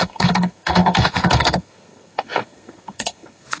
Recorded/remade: remade